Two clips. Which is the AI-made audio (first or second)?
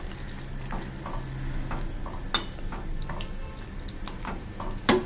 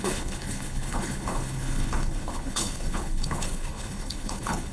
second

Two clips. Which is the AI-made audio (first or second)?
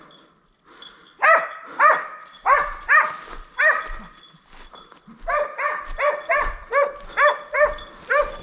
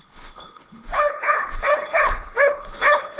second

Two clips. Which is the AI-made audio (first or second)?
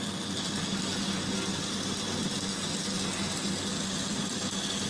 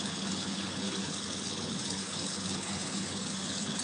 second